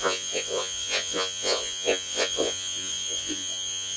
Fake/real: fake